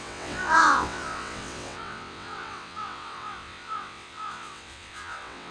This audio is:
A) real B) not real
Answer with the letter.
B